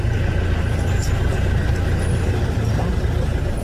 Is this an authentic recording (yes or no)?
yes